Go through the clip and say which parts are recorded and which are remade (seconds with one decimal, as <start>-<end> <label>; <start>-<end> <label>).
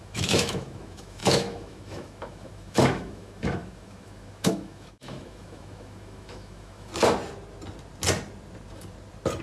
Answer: 0.0-6.9 remade; 6.9-9.4 recorded